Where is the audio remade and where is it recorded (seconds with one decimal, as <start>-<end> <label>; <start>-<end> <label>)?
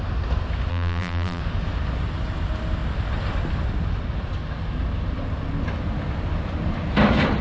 0.0-0.7 recorded; 0.7-1.4 remade; 1.4-7.4 recorded